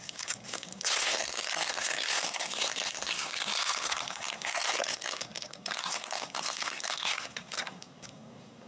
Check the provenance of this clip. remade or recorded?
remade